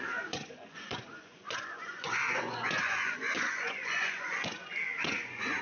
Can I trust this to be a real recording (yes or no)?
no